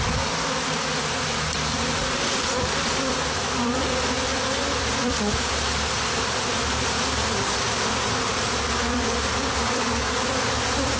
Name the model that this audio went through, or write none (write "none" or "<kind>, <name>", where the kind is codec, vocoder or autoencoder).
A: vocoder, BigVGAN v2